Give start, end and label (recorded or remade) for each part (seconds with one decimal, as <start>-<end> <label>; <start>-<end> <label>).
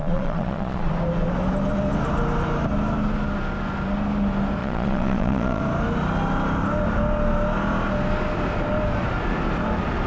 0.0-0.9 remade; 0.9-4.6 recorded; 4.6-5.6 remade; 5.6-10.1 recorded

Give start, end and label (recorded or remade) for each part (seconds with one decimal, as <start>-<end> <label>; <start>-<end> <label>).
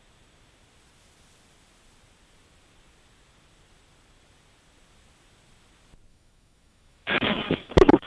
0.0-6.1 recorded; 6.1-8.1 remade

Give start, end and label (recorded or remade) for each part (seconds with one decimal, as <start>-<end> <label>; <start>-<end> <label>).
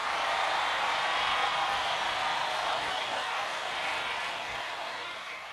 0.0-2.7 recorded; 2.7-3.7 remade; 3.7-4.3 recorded; 4.3-5.5 remade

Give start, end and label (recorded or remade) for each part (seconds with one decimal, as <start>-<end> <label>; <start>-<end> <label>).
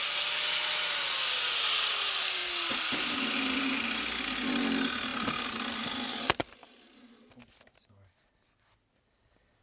0.0-9.6 recorded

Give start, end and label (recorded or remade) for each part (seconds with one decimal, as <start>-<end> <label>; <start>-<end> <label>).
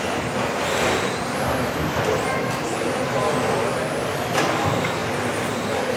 0.0-6.0 recorded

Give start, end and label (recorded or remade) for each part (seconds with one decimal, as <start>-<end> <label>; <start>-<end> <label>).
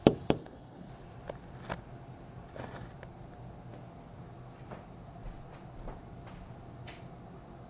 0.0-0.4 recorded; 0.4-0.9 remade; 0.9-7.7 recorded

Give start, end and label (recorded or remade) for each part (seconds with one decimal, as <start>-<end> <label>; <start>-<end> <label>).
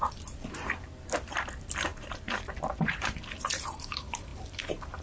0.0-5.0 remade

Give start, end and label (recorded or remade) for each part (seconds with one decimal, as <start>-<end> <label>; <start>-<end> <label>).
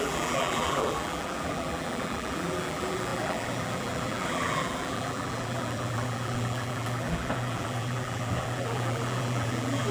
0.0-9.9 remade